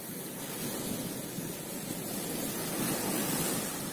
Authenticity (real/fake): real